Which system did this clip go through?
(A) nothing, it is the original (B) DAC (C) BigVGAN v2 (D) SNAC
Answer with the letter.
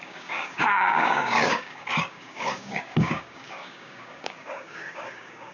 B